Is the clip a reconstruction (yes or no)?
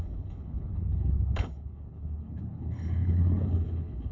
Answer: yes